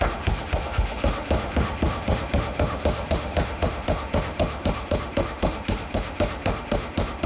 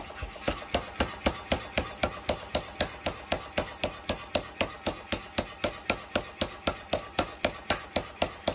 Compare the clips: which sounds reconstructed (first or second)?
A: first